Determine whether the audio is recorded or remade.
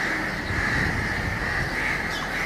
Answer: recorded